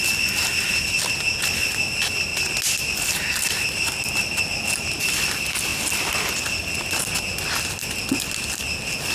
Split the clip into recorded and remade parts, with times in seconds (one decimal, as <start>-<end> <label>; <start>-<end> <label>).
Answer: 0.0-9.1 recorded